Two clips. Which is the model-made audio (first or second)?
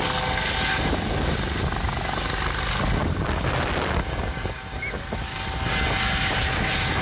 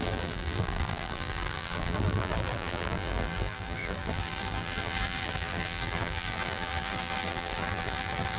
second